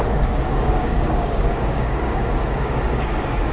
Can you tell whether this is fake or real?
fake